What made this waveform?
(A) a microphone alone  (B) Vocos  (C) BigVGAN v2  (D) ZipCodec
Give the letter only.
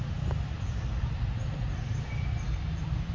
C